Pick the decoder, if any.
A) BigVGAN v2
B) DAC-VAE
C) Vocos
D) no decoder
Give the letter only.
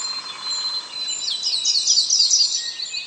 D